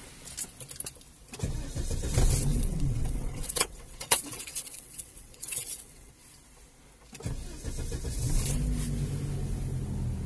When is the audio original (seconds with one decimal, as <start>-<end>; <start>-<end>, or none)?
0.0-2.5; 6.1-10.3